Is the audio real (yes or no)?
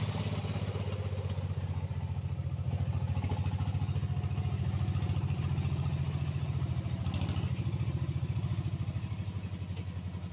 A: yes